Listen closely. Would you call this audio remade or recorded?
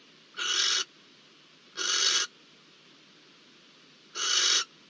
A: remade